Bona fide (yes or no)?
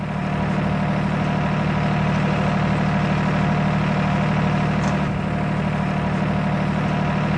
yes